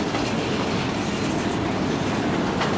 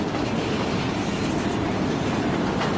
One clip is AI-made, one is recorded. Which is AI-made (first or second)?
second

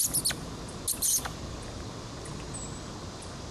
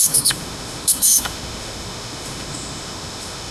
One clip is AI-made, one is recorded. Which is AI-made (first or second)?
second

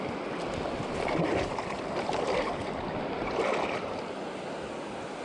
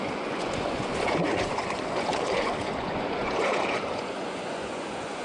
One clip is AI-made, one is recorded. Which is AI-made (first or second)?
second